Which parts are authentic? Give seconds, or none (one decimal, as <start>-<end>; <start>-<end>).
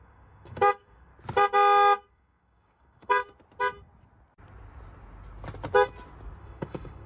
1.1-2.1; 3.2-6.4